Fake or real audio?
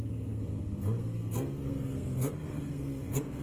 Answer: fake